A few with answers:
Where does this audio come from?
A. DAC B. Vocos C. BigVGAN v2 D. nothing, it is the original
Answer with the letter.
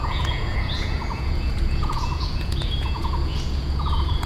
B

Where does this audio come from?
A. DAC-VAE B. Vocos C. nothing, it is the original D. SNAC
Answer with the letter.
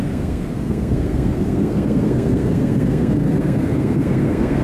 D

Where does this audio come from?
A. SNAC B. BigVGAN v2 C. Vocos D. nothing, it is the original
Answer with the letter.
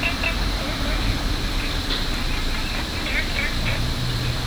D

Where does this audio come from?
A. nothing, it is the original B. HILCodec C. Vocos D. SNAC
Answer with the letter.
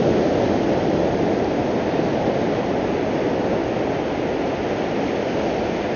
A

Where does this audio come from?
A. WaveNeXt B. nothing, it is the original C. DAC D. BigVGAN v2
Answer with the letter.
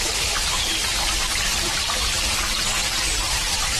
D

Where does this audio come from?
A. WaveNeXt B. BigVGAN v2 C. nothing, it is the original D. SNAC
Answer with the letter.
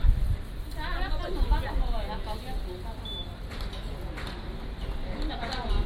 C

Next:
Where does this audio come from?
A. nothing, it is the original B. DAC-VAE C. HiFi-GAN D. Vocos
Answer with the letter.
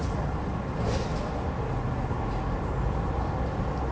A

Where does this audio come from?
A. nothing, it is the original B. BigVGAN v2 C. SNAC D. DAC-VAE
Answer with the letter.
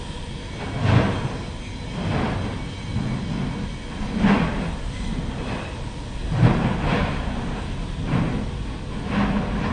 A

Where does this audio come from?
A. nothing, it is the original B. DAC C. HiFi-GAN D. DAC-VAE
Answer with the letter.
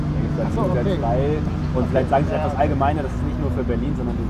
A